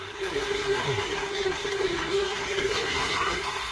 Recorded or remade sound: remade